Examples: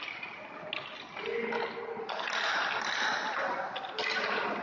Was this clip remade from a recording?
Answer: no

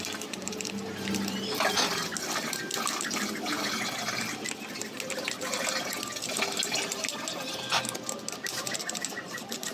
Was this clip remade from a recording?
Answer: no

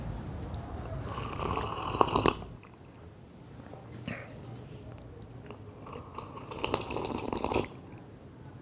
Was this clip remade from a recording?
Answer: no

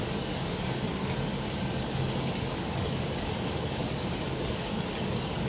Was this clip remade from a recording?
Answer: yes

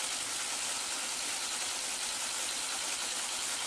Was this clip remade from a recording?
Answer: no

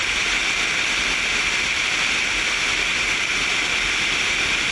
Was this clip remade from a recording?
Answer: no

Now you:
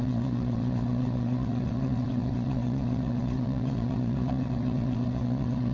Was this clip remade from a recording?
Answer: yes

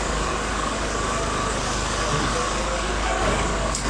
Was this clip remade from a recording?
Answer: yes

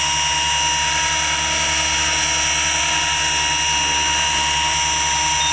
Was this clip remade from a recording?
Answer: no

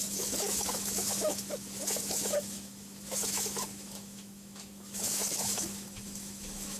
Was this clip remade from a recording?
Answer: yes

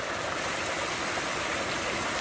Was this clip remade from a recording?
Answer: no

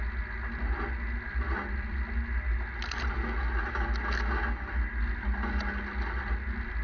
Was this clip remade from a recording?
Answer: no